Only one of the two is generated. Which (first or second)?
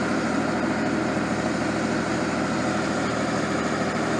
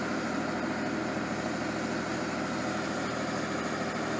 first